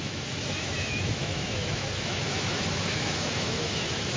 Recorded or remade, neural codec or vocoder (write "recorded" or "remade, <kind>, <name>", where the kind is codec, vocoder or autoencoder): remade, autoencoder, DAC-VAE